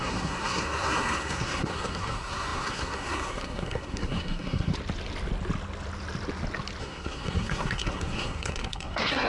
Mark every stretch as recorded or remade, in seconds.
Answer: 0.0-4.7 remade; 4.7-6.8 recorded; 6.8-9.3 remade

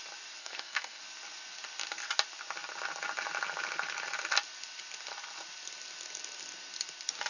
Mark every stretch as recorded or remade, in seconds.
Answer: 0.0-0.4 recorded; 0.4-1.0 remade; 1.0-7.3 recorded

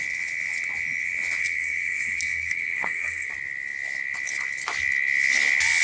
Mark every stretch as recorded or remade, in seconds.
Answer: 0.0-1.4 recorded; 1.4-3.3 remade; 3.3-5.8 recorded